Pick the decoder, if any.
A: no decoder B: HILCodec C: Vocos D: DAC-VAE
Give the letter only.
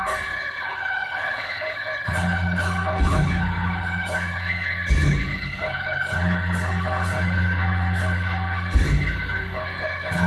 B